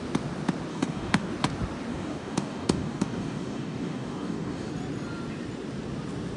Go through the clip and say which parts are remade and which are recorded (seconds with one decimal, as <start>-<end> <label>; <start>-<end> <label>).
0.0-0.7 recorded; 0.7-1.3 remade; 1.3-1.9 recorded; 1.9-4.7 remade; 4.7-6.4 recorded